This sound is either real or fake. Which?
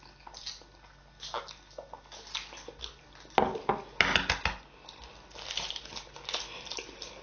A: real